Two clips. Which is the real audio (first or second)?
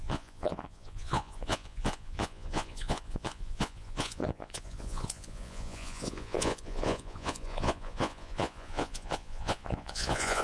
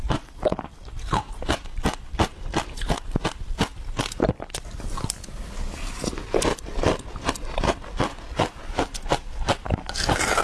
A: second